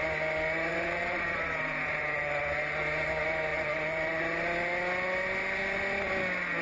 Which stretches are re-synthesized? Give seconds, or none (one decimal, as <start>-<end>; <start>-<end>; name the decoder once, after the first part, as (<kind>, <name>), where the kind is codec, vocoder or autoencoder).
0.7-2.4 (vocoder, BigVGAN v2); 3.5-4.2